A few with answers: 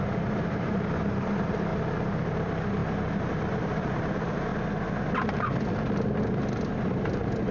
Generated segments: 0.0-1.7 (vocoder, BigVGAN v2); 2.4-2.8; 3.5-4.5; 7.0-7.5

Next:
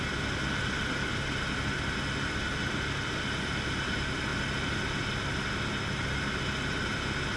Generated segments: none

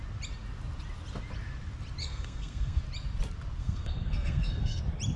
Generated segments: 2.0-2.8 (codec, SNAC); 3.6-4.8

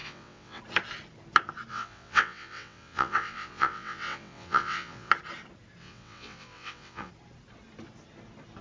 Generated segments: 0.0-0.6 (vocoder, WaveNeXt); 1.7-5.1; 5.8-7.1

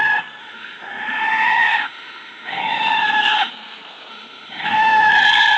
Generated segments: 0.4-3.5 (autoencoder, DAC-VAE); 4.1-5.1

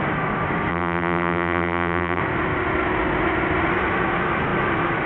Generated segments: 0.7-2.2 (vocoder, BigVGAN v2)

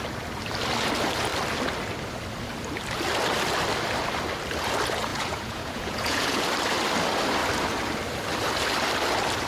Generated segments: 5.1-6.4 (vocoder, Vocos)